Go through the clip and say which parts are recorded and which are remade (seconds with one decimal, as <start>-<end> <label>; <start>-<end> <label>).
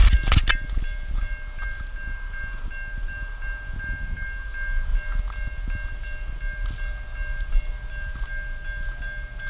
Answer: 0.0-9.5 recorded